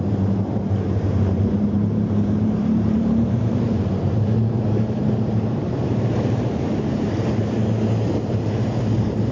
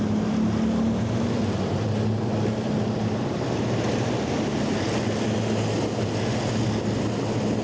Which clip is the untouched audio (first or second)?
second